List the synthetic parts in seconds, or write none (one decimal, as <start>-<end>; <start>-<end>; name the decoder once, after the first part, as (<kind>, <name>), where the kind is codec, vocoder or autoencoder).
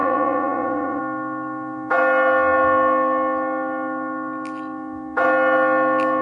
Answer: 0.0-1.0 (vocoder, Vocos)